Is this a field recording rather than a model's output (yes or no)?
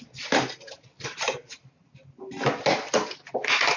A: yes